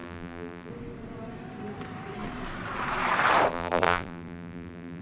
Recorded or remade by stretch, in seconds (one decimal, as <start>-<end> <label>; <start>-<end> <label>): 0.0-0.7 remade; 0.7-3.5 recorded; 3.5-5.0 remade